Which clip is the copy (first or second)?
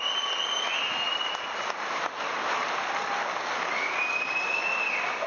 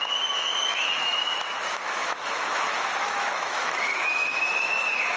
second